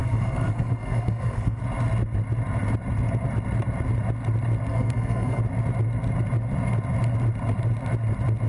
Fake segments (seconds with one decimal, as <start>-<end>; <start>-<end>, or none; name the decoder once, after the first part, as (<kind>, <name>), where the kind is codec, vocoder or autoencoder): 0.0-1.6 (codec, SNAC); 4.7-5.4